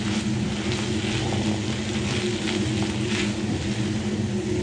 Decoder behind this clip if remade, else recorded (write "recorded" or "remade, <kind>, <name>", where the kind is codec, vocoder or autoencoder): recorded